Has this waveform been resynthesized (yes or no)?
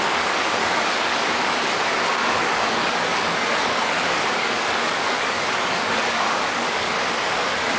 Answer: yes